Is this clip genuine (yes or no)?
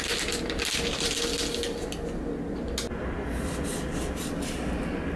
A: yes